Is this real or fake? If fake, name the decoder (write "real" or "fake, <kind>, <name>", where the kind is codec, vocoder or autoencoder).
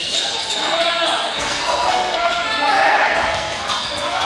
fake, codec, SNAC